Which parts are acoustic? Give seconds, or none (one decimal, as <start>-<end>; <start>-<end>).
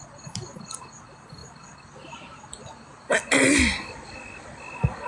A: 0.0-5.1